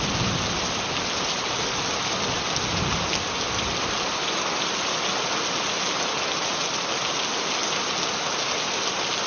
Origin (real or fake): real